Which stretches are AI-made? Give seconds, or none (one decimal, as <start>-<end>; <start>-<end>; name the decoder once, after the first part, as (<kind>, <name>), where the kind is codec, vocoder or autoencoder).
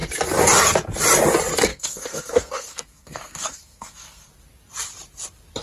1.7-4.3 (codec, SNAC)